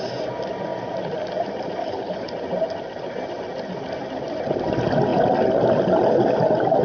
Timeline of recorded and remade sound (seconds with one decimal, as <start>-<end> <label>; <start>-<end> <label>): 0.0-1.8 recorded; 1.8-2.3 remade; 2.3-6.8 recorded